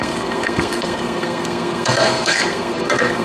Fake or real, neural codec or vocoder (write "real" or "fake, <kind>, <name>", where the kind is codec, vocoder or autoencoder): fake, codec, SNAC